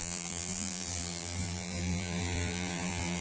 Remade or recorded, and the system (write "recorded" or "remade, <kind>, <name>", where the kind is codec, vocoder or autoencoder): remade, vocoder, BigVGAN v2